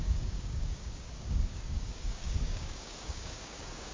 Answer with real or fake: fake